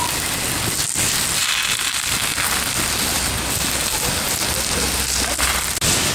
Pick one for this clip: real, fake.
real